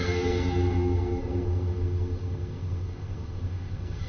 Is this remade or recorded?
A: remade